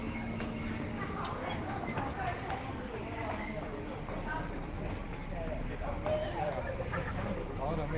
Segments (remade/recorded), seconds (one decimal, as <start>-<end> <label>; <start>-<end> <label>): 0.0-0.7 remade; 0.7-8.0 recorded